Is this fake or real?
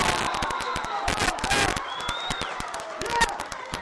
real